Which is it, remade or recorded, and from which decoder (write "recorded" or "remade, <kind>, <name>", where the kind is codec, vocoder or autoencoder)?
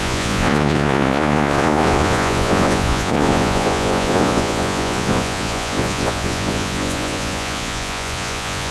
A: remade, vocoder, Vocos